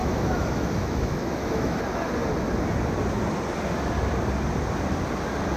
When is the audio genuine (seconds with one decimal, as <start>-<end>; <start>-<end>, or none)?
1.8-5.6